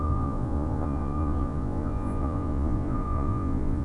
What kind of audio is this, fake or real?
fake